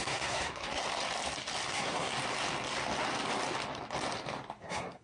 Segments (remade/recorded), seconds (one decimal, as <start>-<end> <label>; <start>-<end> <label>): 0.0-0.8 remade; 0.8-1.7 recorded; 1.7-2.1 remade; 2.1-4.6 recorded; 4.6-5.0 remade